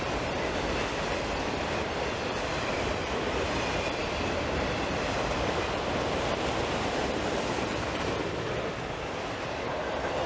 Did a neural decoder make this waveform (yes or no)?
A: yes